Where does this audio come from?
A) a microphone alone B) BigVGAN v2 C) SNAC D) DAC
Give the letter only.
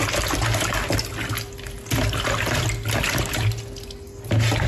A